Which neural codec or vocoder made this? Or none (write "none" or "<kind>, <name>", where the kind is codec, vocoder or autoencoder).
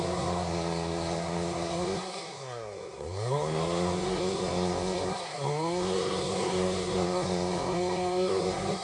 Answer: codec, SNAC